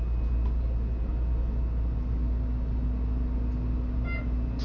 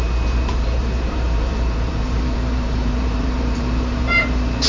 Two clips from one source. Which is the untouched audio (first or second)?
first